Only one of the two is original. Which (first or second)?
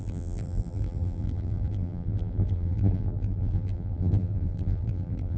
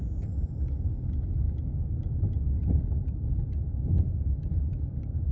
second